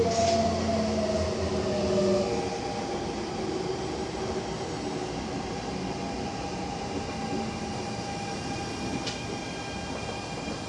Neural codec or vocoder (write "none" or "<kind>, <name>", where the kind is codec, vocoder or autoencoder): none